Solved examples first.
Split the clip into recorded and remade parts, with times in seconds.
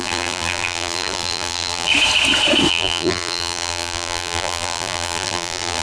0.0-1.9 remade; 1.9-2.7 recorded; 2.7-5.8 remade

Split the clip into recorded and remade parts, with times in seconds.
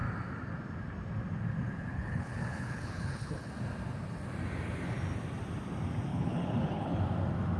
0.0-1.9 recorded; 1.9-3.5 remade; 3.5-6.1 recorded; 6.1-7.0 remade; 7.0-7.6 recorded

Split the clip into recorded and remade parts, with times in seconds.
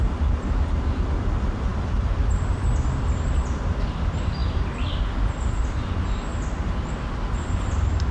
0.0-8.1 recorded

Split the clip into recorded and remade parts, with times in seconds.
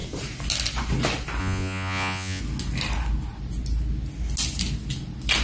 0.0-1.4 recorded; 1.4-2.4 remade; 2.4-5.4 recorded